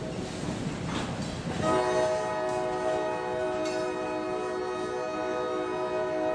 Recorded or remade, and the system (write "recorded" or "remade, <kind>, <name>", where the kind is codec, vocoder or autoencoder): recorded